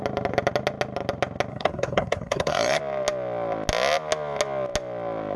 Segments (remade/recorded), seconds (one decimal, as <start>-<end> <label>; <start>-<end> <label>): 0.0-1.5 recorded; 1.5-2.8 remade; 2.8-5.4 recorded